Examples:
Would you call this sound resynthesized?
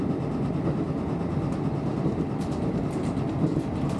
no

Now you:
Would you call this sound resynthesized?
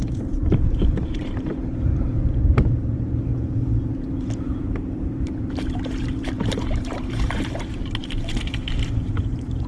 yes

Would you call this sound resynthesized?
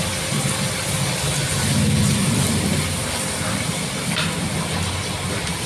no